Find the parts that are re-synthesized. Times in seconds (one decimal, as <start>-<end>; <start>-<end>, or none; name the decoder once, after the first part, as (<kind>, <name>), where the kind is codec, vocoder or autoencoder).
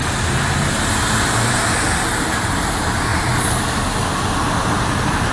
none